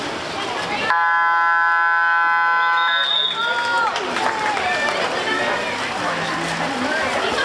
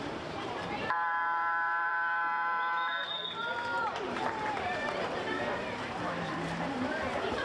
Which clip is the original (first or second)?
first